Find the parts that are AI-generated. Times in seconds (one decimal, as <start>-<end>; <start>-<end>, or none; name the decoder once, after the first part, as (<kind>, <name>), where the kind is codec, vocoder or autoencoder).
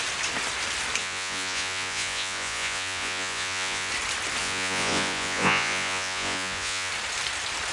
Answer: 1.0-3.9 (vocoder, Vocos); 4.4-6.9